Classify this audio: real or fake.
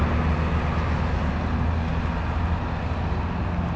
real